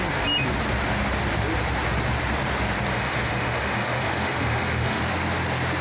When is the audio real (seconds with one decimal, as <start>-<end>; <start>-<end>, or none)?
0.0-2.9; 5.0-5.8